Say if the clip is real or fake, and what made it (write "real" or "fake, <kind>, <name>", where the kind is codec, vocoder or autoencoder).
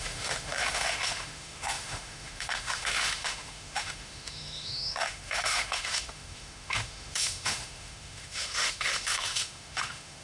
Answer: fake, autoencoder, DAC-VAE